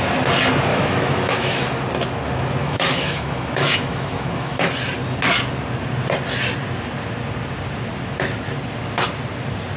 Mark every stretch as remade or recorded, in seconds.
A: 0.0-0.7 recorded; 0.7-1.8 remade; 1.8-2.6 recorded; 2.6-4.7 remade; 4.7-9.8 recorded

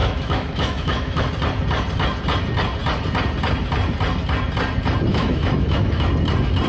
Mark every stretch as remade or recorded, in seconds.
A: 0.0-1.3 remade; 1.3-5.1 recorded; 5.1-6.1 remade; 6.1-6.7 recorded

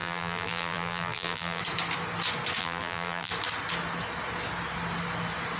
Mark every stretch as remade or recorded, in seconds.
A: 0.0-1.6 remade; 1.6-2.6 recorded; 2.6-3.3 remade; 3.3-5.6 recorded

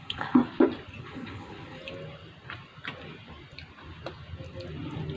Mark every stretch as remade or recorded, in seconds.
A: 0.0-0.4 remade; 0.4-1.0 recorded; 1.0-1.8 remade; 1.8-5.2 recorded

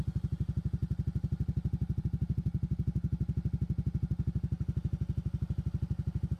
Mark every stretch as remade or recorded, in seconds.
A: 0.0-6.4 recorded